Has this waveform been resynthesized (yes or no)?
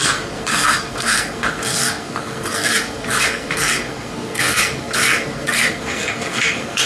yes